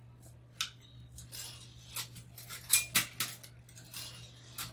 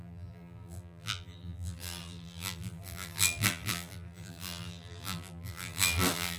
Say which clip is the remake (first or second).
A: second